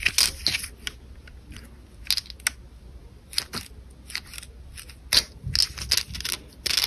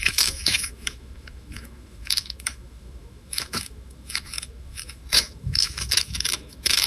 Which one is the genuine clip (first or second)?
first